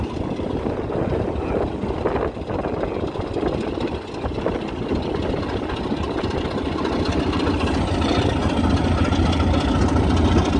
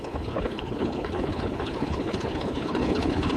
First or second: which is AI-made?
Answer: second